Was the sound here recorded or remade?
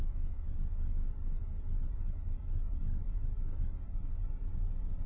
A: recorded